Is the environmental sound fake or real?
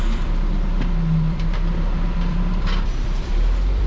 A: fake